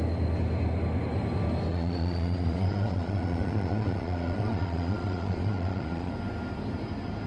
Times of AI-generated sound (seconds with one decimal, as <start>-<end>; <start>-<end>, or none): 1.7-6.1